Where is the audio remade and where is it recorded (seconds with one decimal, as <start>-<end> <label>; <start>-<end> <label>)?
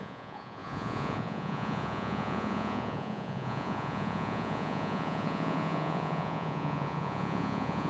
0.0-7.9 remade